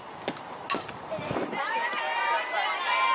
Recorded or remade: recorded